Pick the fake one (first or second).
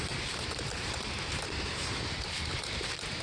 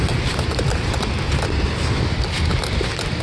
first